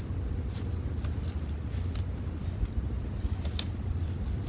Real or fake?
fake